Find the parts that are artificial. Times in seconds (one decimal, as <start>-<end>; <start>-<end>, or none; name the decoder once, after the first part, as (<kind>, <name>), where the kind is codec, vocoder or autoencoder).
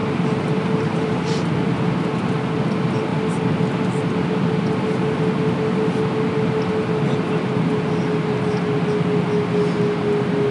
0.0-1.8 (vocoder, BigVGAN v2)